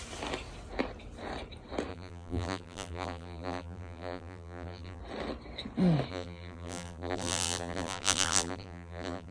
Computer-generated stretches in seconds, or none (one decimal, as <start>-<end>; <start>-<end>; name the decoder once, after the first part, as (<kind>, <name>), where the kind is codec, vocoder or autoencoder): 1.9-5.0 (vocoder, BigVGAN v2); 6.1-9.3

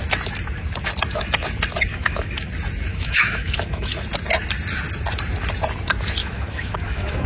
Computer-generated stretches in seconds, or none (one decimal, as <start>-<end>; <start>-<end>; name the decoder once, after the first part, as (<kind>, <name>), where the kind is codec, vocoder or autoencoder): 1.9-2.5 (autoencoder, DAC-VAE); 2.9-3.9; 6.2-7.3